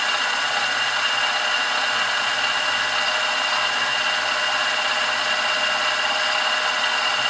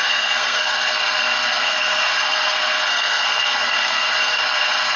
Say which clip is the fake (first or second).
second